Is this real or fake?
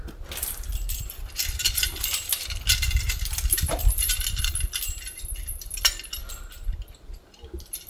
fake